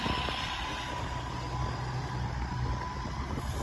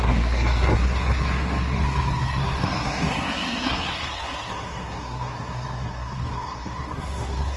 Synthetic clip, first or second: second